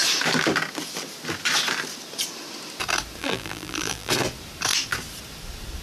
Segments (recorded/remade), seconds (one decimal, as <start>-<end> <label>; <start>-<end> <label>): 0.0-3.2 recorded; 3.2-4.1 remade; 4.1-5.8 recorded